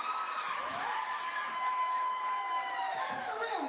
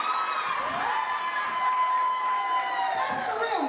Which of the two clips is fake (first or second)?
first